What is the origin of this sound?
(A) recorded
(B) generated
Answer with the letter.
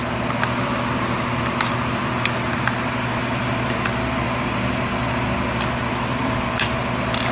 A